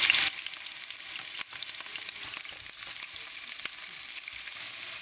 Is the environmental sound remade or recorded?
recorded